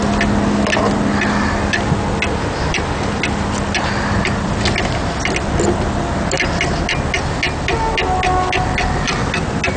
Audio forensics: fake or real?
real